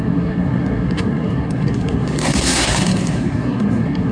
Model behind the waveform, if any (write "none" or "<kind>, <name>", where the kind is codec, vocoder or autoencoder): codec, SNAC